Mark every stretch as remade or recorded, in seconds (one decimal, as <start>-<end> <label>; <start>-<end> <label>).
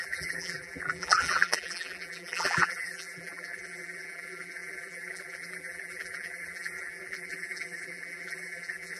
0.0-9.0 remade